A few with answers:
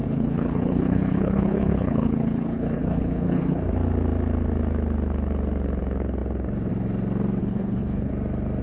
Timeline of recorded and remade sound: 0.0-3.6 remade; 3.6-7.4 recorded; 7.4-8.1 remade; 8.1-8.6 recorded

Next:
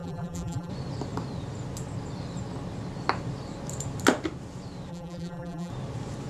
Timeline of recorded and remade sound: 0.0-0.7 remade; 0.7-4.9 recorded; 4.9-5.7 remade; 5.7-6.3 recorded

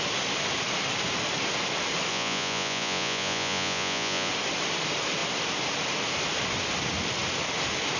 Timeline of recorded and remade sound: 0.0-2.1 recorded; 2.1-4.3 remade; 4.3-8.0 recorded

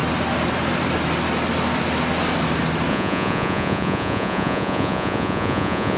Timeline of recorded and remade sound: 0.0-2.9 recorded; 2.9-6.0 remade